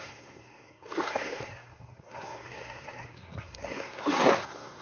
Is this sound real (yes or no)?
no